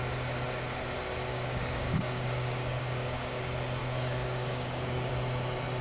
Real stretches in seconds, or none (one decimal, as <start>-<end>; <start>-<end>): 0.0-1.3; 3.4-3.8; 5.1-5.8